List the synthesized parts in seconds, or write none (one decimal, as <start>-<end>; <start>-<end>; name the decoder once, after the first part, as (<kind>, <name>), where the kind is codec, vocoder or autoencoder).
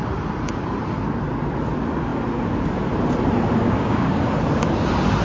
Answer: 3.6-4.3 (codec, DAC)